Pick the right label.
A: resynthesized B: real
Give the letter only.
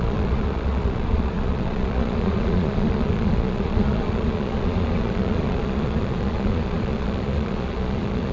A